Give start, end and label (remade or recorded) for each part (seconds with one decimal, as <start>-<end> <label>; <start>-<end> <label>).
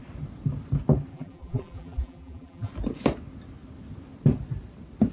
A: 0.0-1.1 recorded; 1.1-2.7 remade; 2.7-5.1 recorded